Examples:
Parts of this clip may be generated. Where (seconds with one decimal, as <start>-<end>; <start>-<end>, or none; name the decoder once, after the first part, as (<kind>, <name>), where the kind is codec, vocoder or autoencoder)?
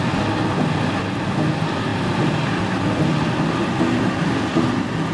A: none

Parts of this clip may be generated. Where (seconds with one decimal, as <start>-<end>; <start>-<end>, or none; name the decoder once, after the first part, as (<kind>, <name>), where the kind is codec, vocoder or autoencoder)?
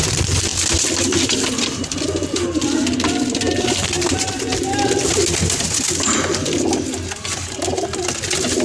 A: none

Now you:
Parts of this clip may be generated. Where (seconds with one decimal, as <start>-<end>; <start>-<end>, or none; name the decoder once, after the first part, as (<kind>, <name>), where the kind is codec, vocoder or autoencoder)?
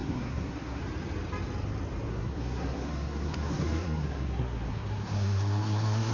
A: 0.0-0.8 (codec, SNAC); 2.1-6.1